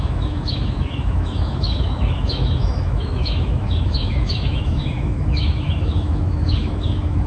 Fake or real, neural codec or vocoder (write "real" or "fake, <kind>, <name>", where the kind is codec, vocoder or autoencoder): fake, autoencoder, DAC-VAE